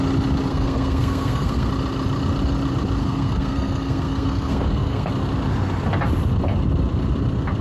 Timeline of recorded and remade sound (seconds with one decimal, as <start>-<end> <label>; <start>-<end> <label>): 0.0-0.5 recorded; 0.5-1.7 remade; 1.7-3.0 recorded; 3.0-5.1 remade; 5.1-7.6 recorded